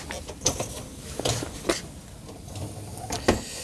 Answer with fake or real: real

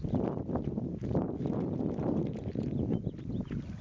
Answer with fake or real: real